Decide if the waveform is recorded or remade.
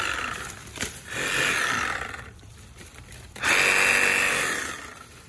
recorded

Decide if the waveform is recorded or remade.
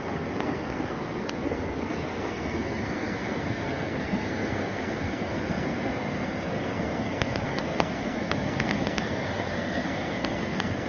remade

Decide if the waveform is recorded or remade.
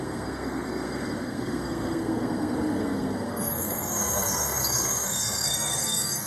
remade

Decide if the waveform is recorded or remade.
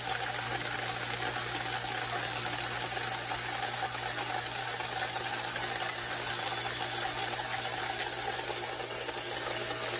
recorded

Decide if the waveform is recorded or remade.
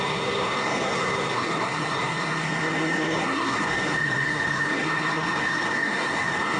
remade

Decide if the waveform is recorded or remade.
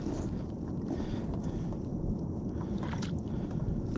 recorded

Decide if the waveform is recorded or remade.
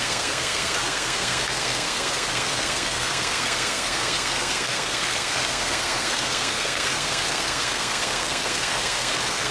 remade